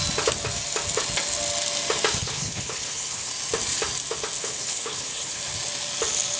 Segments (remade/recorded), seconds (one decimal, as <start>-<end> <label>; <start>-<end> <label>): 0.0-2.2 recorded; 2.2-3.3 remade; 3.3-4.4 recorded; 4.4-5.4 remade; 5.4-6.4 recorded